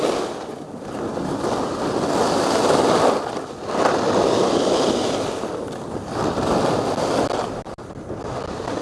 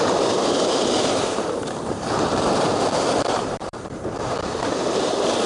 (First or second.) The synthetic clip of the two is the second